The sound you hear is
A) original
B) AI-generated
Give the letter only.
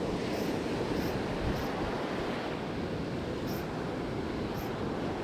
A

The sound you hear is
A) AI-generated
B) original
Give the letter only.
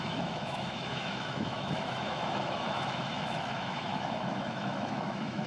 A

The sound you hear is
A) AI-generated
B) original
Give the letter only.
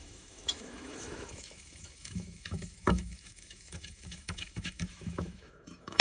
A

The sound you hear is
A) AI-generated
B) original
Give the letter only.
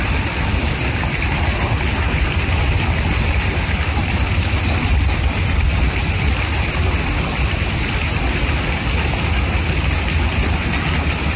B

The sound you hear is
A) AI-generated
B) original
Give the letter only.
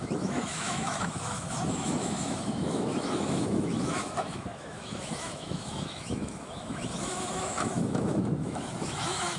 A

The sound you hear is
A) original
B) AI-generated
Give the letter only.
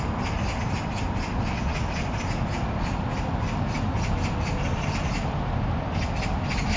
A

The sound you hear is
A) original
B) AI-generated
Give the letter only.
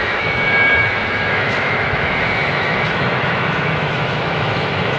B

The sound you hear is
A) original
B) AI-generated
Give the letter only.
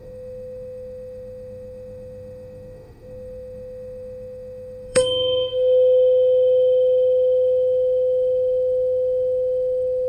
B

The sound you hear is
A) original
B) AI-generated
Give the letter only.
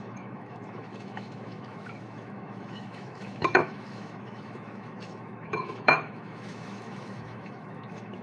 B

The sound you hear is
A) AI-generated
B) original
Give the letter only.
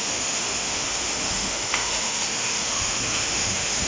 A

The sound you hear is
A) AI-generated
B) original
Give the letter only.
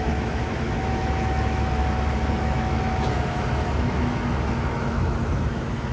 A